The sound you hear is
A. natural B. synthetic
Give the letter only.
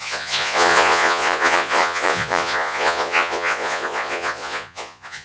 B